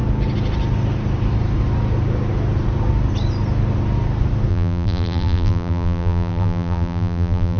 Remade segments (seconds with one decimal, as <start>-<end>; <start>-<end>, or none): 4.5-7.6